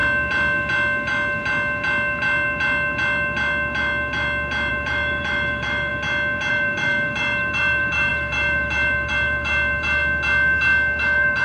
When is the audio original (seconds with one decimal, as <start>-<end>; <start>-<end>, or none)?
0.0-4.7; 5.9-6.5; 10.0-11.0